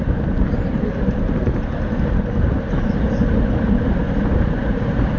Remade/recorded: recorded